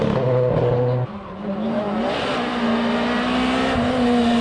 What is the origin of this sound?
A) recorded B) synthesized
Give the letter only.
A